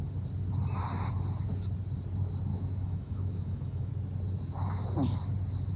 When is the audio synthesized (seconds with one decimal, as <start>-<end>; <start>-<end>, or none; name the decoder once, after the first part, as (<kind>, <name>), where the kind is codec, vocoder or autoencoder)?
2.5-3.9 (autoencoder, DAC-VAE)